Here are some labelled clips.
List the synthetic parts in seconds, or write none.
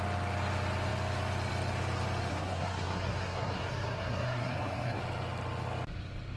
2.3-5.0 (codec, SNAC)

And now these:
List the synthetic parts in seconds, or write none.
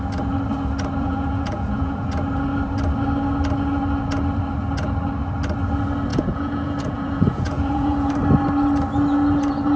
1.0-2.1 (vocoder, Vocos); 6.1-8.1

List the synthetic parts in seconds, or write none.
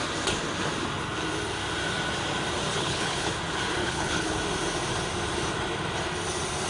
2.7-3.3 (codec, HILCodec); 3.8-4.4